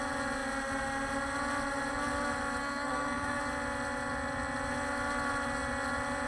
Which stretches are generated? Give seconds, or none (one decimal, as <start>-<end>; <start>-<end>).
2.6-3.4